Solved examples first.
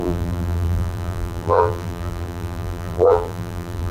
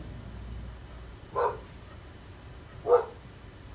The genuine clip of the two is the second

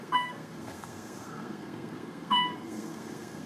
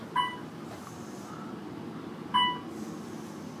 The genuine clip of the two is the second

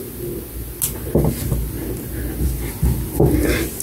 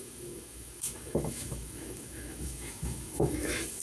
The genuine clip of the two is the first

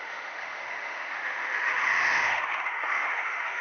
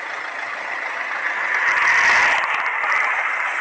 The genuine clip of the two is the second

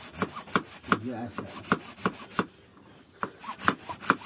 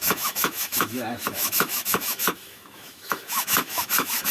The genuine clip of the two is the first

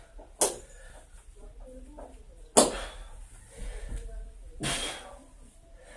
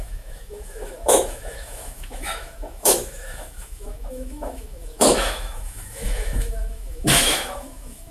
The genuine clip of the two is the first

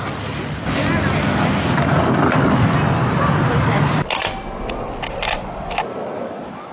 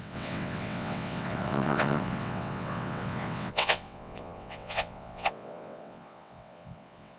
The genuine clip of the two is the first